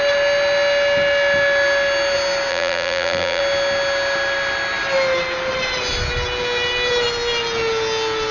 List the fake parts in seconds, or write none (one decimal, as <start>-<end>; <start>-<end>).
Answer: 2.5-3.4